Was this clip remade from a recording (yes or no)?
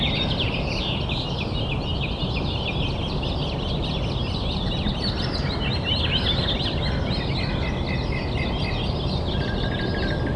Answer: no